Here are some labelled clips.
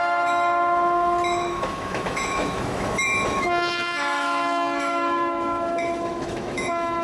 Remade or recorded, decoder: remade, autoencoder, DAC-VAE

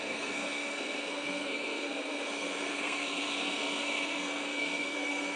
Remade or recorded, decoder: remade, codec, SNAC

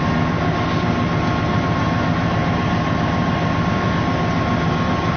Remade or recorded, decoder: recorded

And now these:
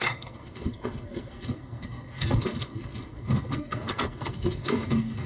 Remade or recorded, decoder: remade, codec, SNAC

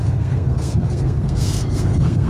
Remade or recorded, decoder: remade, codec, SNAC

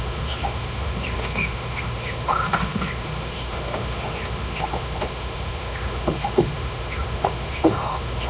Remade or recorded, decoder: remade, autoencoder, DAC-VAE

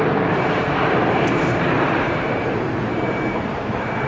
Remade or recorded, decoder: remade, vocoder, BigVGAN v2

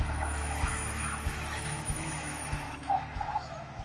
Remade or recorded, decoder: remade, autoencoder, DAC-VAE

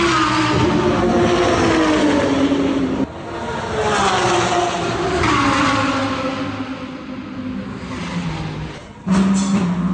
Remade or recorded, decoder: recorded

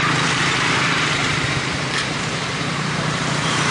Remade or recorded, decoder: remade, vocoder, BigVGAN v2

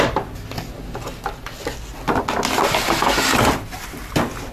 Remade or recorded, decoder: recorded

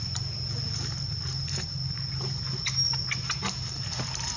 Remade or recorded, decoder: recorded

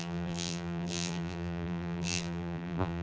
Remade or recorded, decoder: remade, vocoder, BigVGAN v2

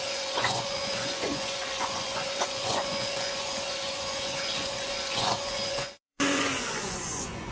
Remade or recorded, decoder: remade, vocoder, Vocos